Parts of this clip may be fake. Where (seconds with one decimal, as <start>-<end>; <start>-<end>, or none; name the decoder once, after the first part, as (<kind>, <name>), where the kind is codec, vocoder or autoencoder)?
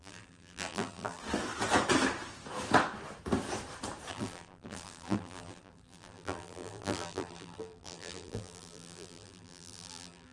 0.0-1.2 (vocoder, BigVGAN v2); 4.1-10.3